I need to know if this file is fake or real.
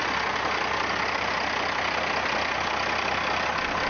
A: real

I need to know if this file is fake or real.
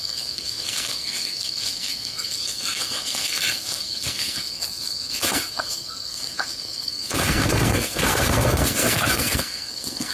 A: fake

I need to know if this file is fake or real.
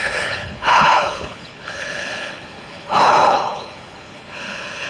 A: fake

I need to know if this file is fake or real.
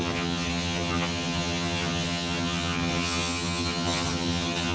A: fake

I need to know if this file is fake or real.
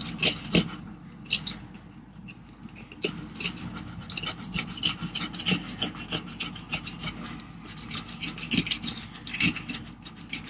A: real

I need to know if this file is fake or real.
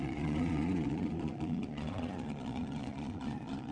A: fake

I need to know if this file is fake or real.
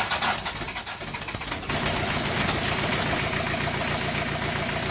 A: real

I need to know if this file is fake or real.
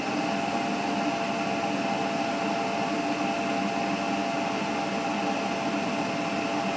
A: real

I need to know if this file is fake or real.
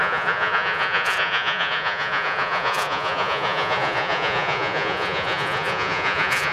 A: fake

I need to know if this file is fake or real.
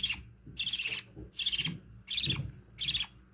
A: real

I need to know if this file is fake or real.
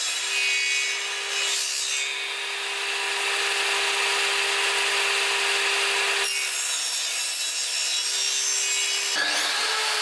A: real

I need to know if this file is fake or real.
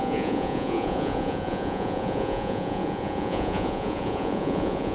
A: fake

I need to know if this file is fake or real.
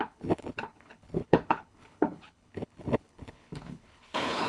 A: fake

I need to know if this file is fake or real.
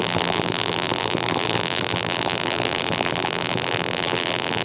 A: fake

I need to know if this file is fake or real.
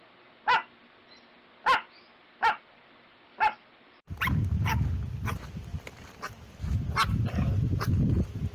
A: real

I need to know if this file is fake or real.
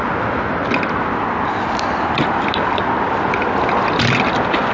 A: real